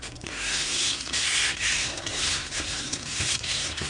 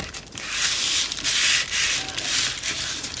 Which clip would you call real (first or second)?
second